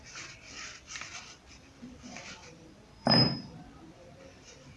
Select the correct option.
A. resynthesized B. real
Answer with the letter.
A